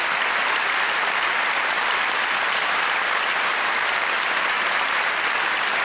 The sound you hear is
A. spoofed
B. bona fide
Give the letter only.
B